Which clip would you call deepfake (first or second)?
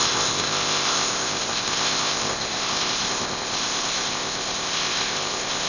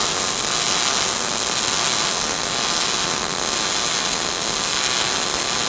first